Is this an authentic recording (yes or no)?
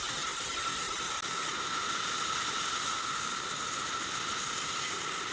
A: yes